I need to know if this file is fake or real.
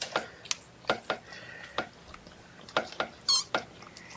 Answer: real